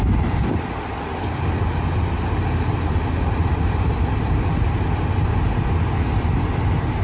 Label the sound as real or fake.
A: real